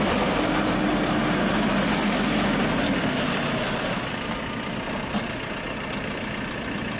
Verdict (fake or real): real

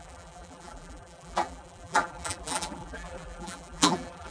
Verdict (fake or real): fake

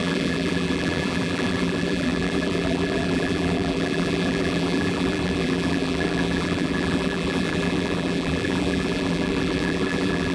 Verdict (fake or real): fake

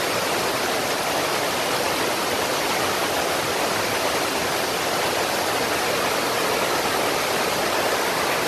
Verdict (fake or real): real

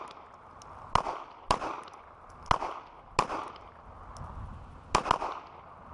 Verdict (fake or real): real